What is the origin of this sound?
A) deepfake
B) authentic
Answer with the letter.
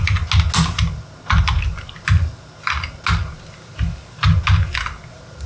B